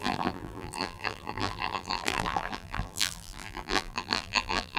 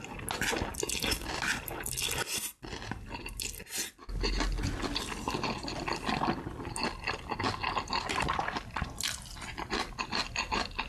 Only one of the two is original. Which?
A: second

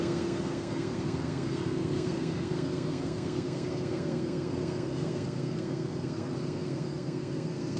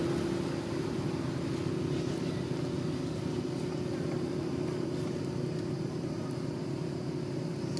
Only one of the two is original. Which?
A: second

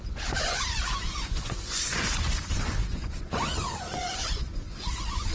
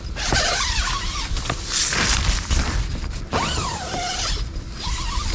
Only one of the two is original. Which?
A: second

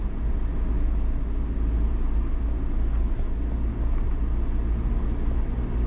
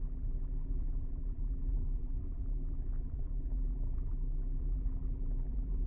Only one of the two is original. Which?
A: first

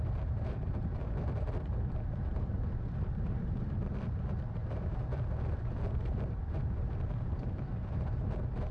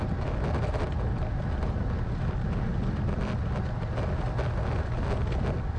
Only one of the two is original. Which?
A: second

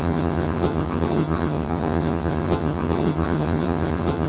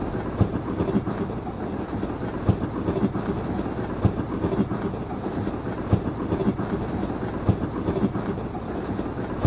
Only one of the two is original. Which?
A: second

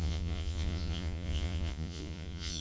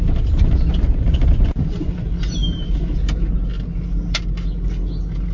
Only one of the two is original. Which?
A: second